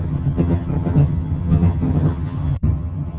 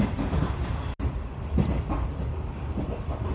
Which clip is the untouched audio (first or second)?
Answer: second